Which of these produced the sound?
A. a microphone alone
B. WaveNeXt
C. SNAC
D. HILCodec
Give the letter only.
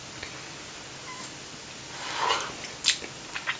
A